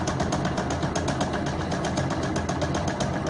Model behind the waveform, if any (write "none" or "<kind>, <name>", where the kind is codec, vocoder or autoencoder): none